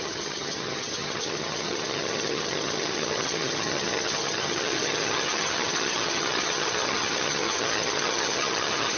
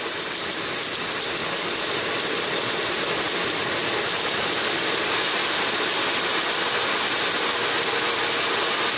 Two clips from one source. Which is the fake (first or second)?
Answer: first